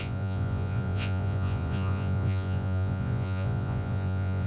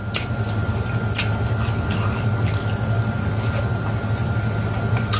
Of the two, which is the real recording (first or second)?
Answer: second